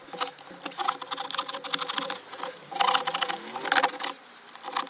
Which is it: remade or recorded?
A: recorded